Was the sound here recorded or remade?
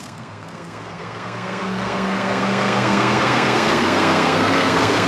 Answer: remade